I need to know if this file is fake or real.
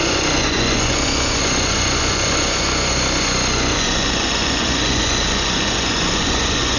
fake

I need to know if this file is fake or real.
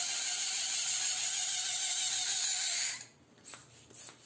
real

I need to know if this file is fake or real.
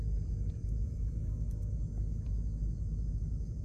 fake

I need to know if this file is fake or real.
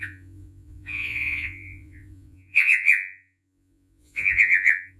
fake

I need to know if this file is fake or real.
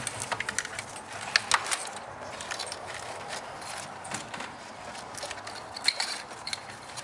real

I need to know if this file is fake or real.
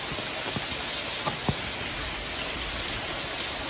real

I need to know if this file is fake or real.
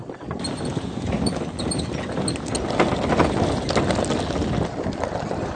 real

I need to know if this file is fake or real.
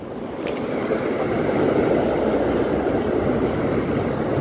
real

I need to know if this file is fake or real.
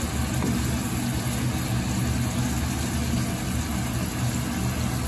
real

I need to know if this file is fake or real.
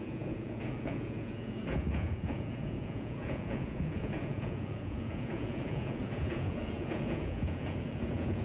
fake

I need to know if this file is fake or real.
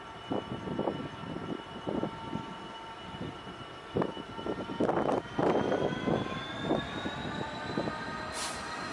real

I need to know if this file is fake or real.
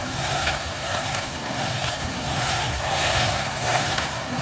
fake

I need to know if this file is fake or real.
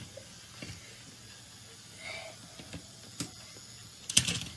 real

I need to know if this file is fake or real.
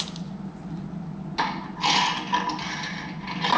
real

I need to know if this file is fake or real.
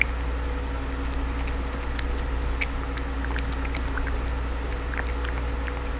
real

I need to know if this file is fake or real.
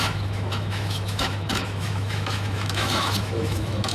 fake